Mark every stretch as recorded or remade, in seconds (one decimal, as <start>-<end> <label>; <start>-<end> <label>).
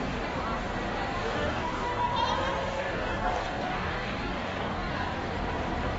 0.0-1.2 recorded; 1.2-2.1 remade; 2.1-2.7 recorded; 2.7-4.9 remade; 4.9-6.0 recorded